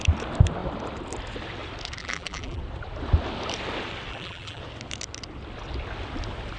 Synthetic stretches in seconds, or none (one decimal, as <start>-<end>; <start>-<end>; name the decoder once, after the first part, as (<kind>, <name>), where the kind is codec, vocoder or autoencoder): 2.0-2.6 (vocoder, BigVGAN v2); 4.1-4.6